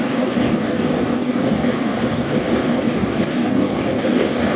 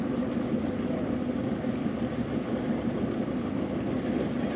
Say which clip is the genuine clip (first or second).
second